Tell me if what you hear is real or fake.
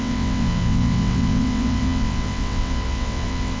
fake